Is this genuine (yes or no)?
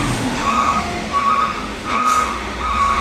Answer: no